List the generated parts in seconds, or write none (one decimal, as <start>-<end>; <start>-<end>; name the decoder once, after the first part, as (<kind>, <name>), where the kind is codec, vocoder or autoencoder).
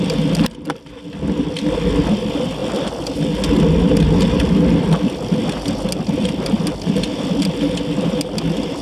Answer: none